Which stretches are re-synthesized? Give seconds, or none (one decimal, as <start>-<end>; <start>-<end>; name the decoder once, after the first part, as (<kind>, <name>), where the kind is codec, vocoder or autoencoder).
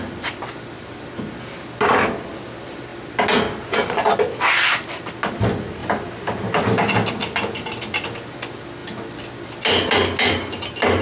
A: none